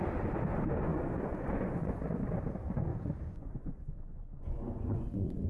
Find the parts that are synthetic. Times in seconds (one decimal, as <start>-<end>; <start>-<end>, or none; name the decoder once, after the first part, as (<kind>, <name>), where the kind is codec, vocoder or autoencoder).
0.9-2.3 (vocoder, Vocos); 2.9-5.5